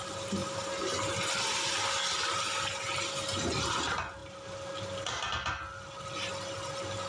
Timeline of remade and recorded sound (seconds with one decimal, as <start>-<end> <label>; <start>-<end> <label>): 0.0-7.1 recorded